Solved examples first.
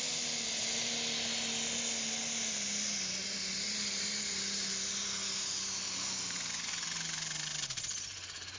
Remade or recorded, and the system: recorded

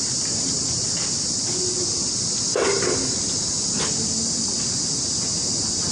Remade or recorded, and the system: recorded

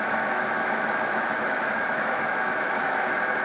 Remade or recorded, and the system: remade, autoencoder, DAC-VAE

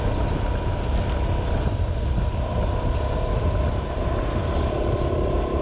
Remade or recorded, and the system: recorded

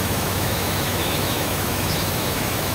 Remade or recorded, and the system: remade, autoencoder, DAC-VAE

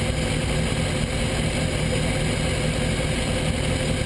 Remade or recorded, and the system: recorded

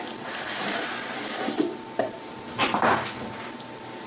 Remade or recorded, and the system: recorded